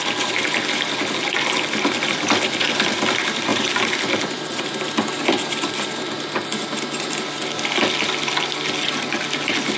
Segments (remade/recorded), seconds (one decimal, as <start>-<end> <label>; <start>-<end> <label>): 0.0-3.5 recorded; 3.5-4.0 remade; 4.0-9.8 recorded